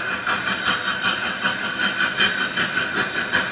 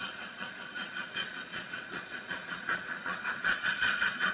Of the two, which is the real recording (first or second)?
first